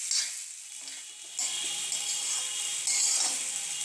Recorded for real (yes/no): yes